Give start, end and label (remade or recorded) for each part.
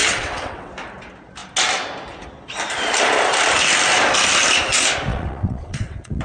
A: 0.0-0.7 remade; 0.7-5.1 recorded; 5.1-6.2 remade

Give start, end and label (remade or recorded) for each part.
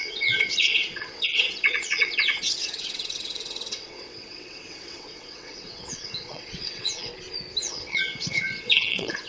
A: 0.0-7.1 remade; 7.1-7.6 recorded; 7.6-9.3 remade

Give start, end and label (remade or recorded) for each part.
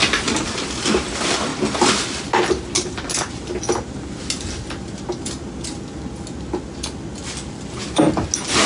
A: 0.0-8.7 recorded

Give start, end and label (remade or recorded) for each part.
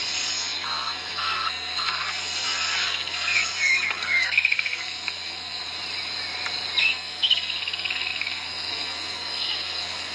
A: 0.0-5.6 remade; 5.6-6.8 recorded; 6.8-10.1 remade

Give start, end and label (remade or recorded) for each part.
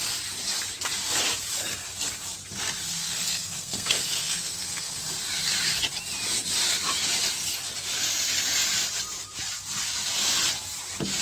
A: 0.0-2.9 recorded; 2.9-5.0 remade; 5.0-11.2 recorded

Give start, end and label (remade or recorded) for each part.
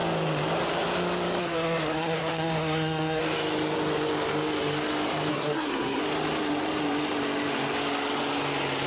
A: 0.0-1.4 recorded; 1.4-3.2 remade; 3.2-5.3 recorded; 5.3-6.0 remade; 6.0-8.9 recorded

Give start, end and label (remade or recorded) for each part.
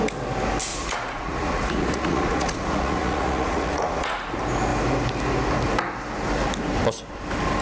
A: 0.0-0.7 recorded; 0.7-4.3 remade; 4.3-7.6 recorded